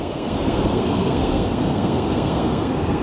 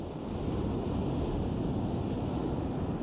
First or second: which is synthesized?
first